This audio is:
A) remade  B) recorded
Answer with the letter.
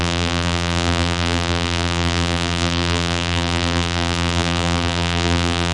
A